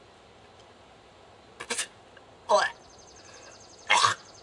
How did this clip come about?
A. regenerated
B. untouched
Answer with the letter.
B